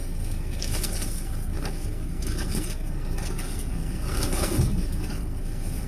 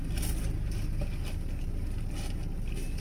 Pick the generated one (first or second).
first